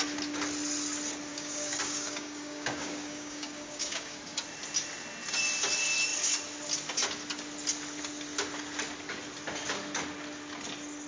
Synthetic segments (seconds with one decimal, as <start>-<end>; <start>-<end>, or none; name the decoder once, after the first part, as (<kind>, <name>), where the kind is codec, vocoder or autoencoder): 1.3-4.2 (codec, DAC)